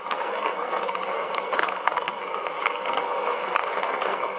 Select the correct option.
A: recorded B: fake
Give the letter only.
B